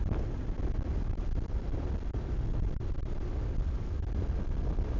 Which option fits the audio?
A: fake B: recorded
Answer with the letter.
B